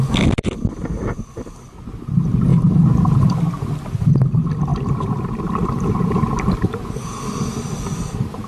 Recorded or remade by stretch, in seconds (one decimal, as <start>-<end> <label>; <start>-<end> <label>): 0.0-2.5 recorded; 2.5-3.4 remade; 3.4-4.7 recorded; 4.7-6.6 remade; 6.6-8.5 recorded